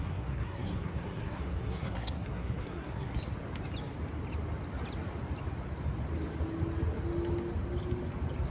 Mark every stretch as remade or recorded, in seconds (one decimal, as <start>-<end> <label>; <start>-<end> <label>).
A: 0.0-3.2 remade; 3.2-8.5 recorded